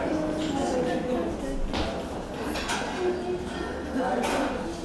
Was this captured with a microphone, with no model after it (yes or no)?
yes